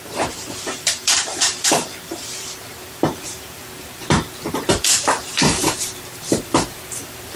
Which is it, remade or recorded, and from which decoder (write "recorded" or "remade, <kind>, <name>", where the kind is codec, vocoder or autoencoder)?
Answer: remade, vocoder, BigVGAN v2